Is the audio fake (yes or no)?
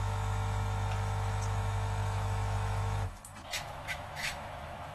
yes